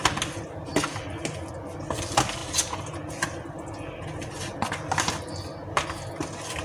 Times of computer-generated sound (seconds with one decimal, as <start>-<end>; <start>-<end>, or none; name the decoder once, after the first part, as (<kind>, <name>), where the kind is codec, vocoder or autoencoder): none